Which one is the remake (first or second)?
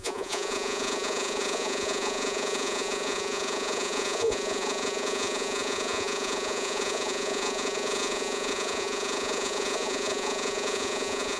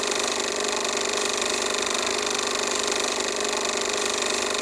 first